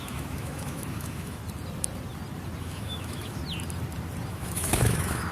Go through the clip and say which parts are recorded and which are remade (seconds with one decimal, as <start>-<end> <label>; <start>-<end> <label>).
0.0-1.4 remade; 1.4-2.6 recorded; 2.6-3.4 remade; 3.4-4.3 recorded; 4.3-5.3 remade